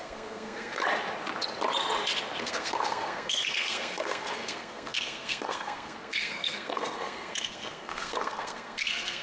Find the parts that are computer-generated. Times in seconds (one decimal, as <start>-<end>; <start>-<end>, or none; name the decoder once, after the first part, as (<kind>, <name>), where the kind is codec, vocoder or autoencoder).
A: 0.0-0.8 (codec, SNAC); 2.4-9.2